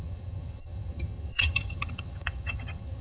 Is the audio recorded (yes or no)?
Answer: no